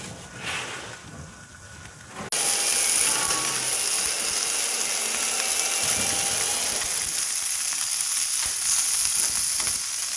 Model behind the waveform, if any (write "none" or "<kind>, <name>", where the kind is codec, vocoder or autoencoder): none